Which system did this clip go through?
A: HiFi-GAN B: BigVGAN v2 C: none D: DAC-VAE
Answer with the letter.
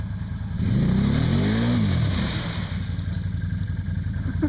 C